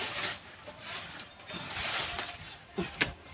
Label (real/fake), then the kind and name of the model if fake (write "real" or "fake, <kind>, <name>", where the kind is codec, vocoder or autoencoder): real